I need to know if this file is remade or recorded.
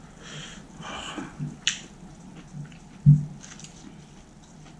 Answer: recorded